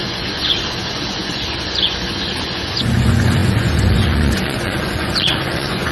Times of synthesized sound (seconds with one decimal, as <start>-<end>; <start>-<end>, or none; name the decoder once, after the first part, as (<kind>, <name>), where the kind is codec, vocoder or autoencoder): 0.0-5.9 (vocoder, Vocos)